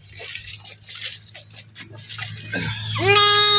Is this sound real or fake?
real